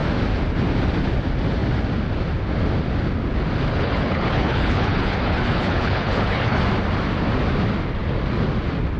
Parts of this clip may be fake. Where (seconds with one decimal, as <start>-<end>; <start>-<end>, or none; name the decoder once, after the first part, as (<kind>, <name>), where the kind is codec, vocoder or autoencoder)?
3.7-6.6 (codec, HILCodec)